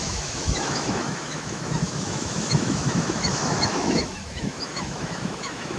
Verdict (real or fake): fake